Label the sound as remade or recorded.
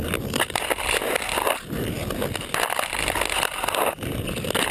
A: recorded